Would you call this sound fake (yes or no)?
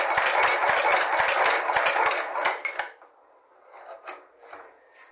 no